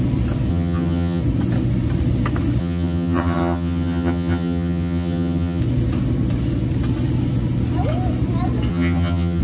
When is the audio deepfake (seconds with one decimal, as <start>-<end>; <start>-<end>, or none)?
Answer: 0.5-1.2; 2.6-5.6; 8.7-9.4